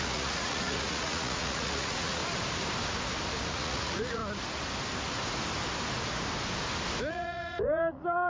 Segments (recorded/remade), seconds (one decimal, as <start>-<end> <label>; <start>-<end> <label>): 0.0-2.2 remade; 2.2-3.5 recorded; 3.5-4.2 remade; 4.2-7.1 recorded; 7.1-8.3 remade